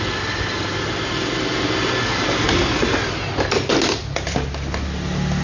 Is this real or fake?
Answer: real